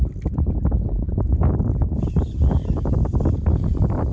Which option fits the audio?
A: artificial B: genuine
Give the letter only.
B